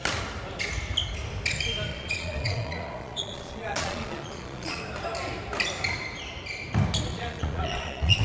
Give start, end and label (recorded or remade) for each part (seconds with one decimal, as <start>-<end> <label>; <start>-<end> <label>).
0.0-1.9 recorded; 1.9-4.8 remade; 4.8-7.1 recorded; 7.1-8.2 remade